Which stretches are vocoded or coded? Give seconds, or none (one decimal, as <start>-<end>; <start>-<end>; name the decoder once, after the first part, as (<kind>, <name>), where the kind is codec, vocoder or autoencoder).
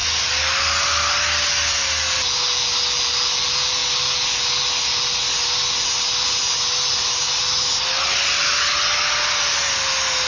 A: none